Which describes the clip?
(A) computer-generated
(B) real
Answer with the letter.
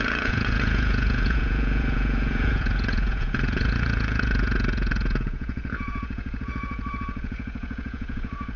A